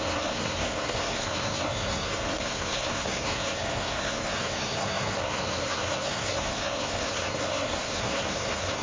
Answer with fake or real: fake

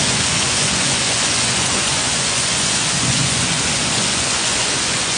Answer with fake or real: fake